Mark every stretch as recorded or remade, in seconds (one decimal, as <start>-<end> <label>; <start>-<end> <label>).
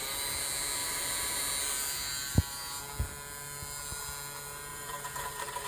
0.0-0.8 recorded; 0.8-1.4 remade; 1.4-4.7 recorded; 4.7-5.7 remade